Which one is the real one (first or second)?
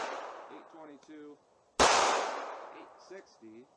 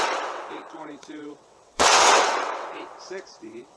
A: first